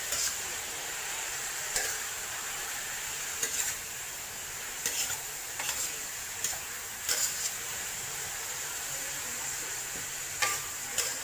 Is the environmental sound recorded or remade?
remade